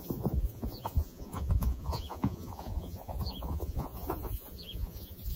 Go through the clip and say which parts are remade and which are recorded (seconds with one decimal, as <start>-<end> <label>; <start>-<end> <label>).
0.0-5.4 remade